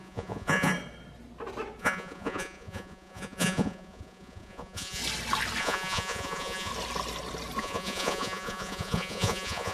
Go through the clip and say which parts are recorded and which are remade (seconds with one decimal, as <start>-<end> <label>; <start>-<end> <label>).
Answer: 0.0-0.7 remade; 0.7-1.8 recorded; 1.8-5.0 remade; 5.0-5.6 recorded; 5.6-6.7 remade; 6.7-7.6 recorded; 7.6-9.7 remade